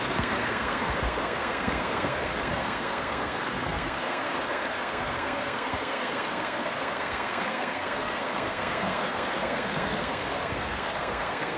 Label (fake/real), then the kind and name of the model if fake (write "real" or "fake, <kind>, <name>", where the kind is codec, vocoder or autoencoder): fake, codec, SNAC